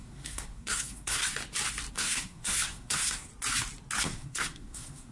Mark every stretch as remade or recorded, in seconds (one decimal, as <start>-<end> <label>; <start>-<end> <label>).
0.0-1.2 remade; 1.2-1.9 recorded; 1.9-3.3 remade; 3.3-4.0 recorded; 4.0-5.1 remade